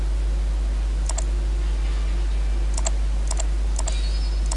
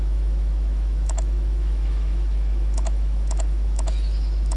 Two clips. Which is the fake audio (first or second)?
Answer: second